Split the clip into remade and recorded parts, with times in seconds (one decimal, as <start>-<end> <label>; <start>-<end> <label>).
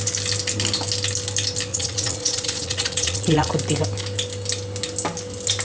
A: 0.0-1.7 recorded; 1.7-3.5 remade; 3.5-5.6 recorded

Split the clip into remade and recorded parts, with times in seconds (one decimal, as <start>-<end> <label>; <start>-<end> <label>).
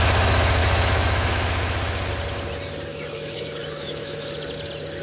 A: 0.0-0.6 recorded; 0.6-2.1 remade; 2.1-2.9 recorded; 2.9-4.3 remade; 4.3-5.0 recorded